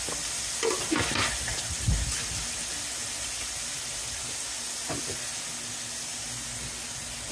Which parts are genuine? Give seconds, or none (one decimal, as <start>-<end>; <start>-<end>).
0.0-7.3